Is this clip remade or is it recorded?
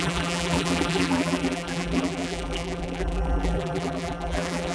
remade